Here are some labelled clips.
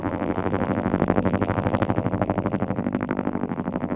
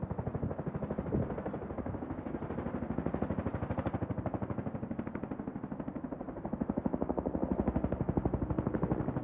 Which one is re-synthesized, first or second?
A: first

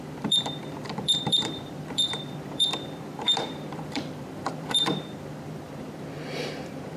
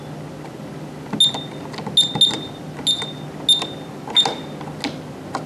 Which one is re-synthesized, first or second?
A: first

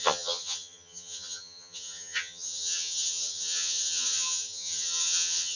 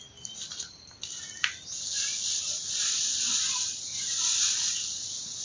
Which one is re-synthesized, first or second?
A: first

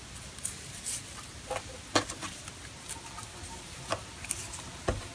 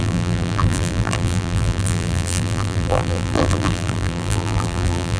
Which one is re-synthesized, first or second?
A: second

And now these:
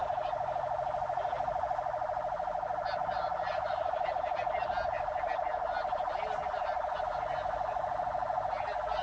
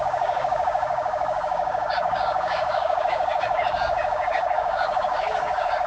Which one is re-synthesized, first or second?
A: second